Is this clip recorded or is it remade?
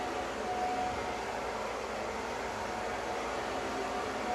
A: recorded